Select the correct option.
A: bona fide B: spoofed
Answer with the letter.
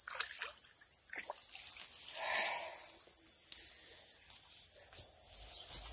A